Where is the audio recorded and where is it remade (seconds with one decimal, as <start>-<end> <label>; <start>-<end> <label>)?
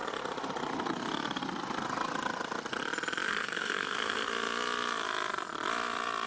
0.0-3.3 recorded; 3.3-4.3 remade; 4.3-6.3 recorded